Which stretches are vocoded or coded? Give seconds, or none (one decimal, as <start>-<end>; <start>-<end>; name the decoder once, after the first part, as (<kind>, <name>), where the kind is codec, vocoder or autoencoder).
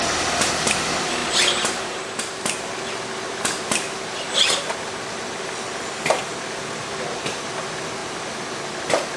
6.8-7.4 (vocoder, BigVGAN v2)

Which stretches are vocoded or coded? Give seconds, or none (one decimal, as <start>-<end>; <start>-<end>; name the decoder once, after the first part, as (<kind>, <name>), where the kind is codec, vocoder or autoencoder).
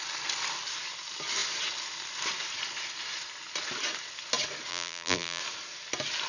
4.7-5.4 (vocoder, BigVGAN v2)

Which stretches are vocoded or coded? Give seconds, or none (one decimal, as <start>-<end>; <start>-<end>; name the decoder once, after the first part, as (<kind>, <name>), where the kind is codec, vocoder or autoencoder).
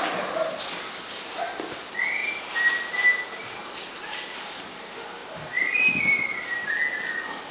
5.2-6.7 (vocoder, BigVGAN v2)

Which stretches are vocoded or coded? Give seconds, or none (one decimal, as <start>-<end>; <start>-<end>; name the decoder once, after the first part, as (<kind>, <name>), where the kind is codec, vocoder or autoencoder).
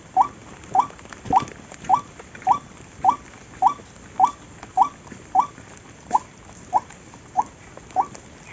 none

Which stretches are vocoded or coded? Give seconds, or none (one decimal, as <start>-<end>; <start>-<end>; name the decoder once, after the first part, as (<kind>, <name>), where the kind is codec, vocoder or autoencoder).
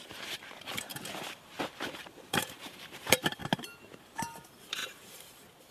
0.0-3.4 (vocoder, BigVGAN v2); 4.0-5.7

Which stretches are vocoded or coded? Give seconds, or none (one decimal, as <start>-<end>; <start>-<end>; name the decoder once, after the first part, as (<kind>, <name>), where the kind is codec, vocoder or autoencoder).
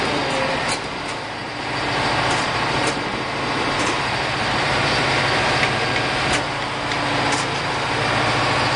1.4-5.1 (vocoder, BigVGAN v2)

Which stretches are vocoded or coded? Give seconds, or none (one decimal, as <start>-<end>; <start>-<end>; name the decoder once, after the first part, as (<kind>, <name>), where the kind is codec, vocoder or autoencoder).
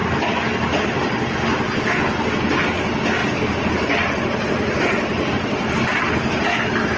3.2-6.1 (vocoder, BigVGAN v2)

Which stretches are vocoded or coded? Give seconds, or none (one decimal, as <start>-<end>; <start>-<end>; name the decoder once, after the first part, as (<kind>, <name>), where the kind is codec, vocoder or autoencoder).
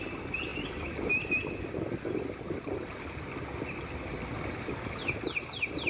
none